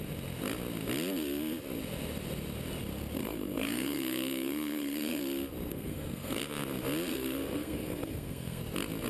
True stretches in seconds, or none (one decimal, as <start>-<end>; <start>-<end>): 0.0-3.2; 5.2-5.7; 6.4-7.1; 8.6-9.1